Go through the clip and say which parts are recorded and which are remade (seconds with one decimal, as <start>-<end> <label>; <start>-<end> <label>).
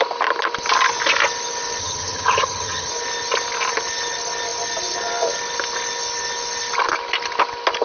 0.0-1.8 recorded; 1.8-2.9 remade; 2.9-7.8 recorded